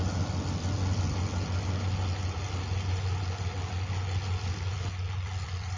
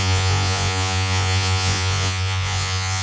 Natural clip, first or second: first